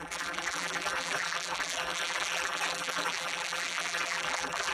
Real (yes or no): no